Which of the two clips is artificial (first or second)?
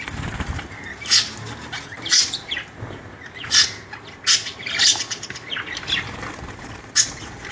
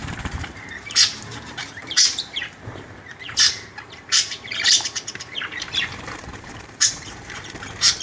second